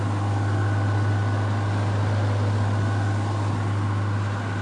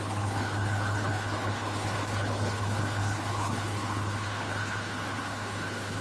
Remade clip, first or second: second